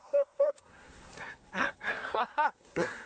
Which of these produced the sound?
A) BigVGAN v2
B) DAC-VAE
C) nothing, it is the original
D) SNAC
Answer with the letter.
D